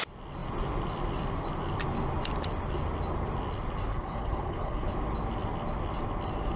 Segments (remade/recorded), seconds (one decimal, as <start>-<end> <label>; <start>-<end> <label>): 0.0-3.9 recorded; 3.9-4.9 remade; 4.9-6.6 recorded